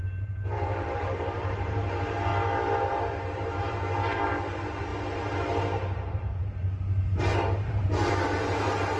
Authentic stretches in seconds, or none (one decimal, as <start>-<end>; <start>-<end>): 2.3-2.8